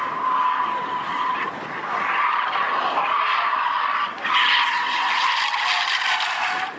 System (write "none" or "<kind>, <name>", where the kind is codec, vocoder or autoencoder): none